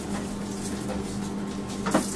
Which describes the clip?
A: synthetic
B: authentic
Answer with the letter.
B